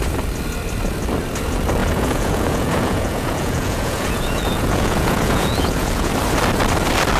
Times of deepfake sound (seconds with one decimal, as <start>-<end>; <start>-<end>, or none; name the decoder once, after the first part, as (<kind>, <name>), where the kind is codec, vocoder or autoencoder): 1.8-6.1 (vocoder, Vocos)